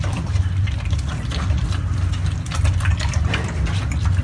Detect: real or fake real